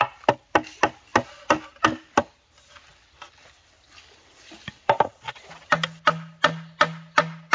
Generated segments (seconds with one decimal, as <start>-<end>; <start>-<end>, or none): 2.9-5.4